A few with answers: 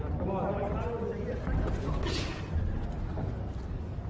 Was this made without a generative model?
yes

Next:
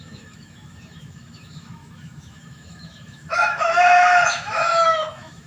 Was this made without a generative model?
no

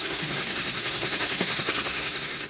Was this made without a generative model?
no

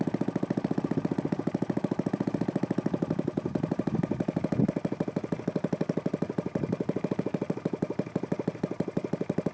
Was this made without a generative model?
yes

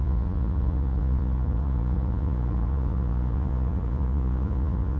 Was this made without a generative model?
no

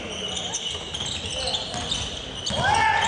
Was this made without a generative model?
yes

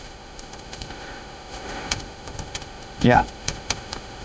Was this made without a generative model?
no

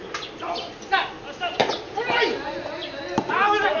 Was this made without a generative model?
yes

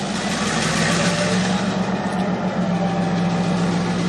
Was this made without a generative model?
yes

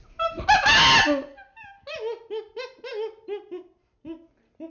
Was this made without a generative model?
yes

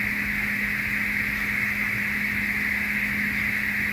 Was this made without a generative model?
yes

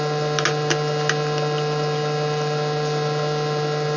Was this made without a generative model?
yes